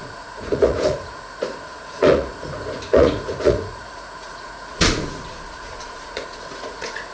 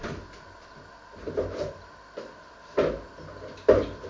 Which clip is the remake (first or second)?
first